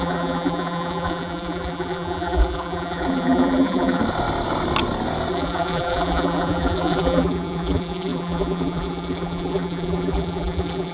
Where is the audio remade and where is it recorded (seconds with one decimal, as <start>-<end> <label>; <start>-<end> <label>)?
0.0-4.0 remade; 4.0-5.3 recorded; 5.3-10.9 remade